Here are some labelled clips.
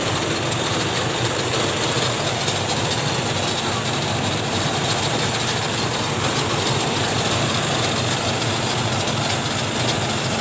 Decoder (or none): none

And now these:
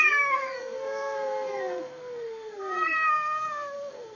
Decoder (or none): codec, SNAC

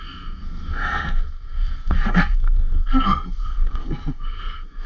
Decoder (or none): codec, SNAC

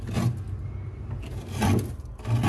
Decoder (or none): none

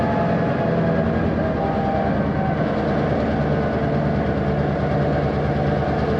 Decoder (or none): none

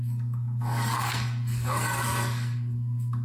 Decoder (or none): codec, SNAC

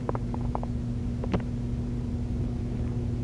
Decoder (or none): none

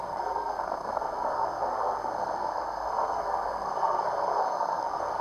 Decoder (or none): codec, SNAC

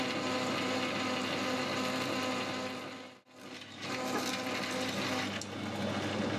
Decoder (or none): none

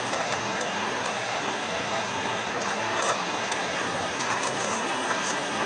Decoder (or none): codec, SNAC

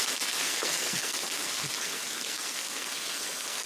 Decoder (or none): codec, SNAC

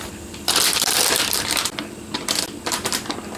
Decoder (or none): none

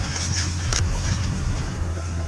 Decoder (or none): codec, SNAC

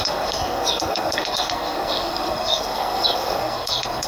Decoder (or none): codec, SNAC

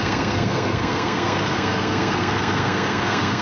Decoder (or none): codec, SNAC